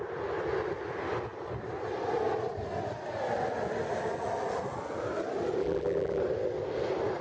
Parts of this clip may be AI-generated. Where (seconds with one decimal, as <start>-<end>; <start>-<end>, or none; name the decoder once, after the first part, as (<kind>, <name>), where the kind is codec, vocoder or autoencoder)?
5.6-6.2 (vocoder, BigVGAN v2)